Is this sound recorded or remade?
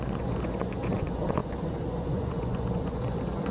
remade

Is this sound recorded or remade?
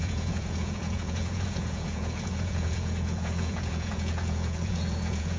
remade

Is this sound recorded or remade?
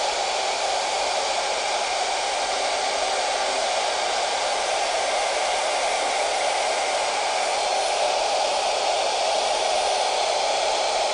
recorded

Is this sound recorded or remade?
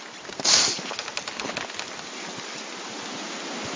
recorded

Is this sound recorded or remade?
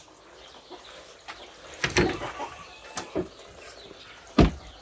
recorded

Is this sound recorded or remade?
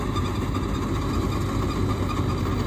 recorded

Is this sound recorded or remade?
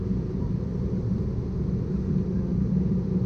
recorded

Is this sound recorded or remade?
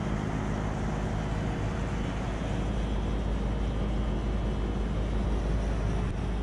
recorded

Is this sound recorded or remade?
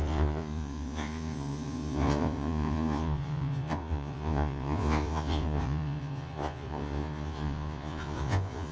remade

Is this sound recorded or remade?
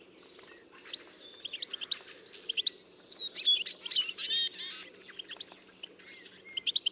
recorded